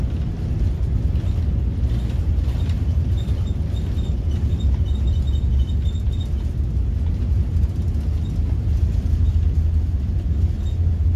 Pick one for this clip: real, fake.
real